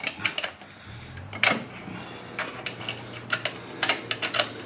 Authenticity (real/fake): real